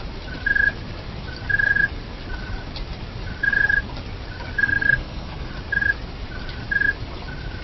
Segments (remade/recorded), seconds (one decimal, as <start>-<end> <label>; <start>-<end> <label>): 0.0-4.6 recorded; 4.6-5.5 remade; 5.5-7.6 recorded